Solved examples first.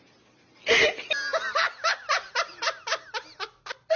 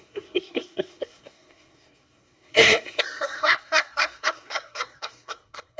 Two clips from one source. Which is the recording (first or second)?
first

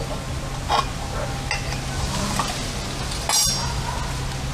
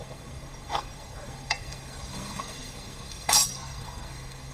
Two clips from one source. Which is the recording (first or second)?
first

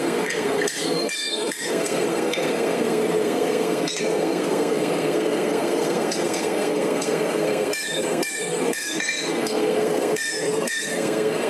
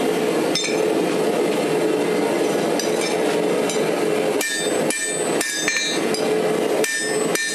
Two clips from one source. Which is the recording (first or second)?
second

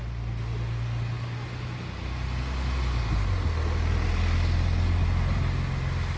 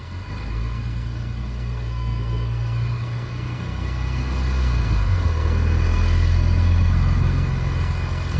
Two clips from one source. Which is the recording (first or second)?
first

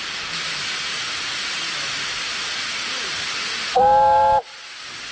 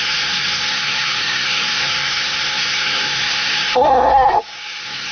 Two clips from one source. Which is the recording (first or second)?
first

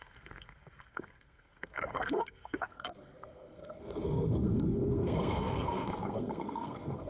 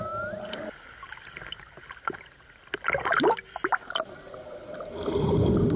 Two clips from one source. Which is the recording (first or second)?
second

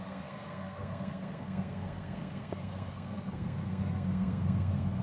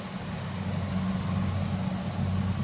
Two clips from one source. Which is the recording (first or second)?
second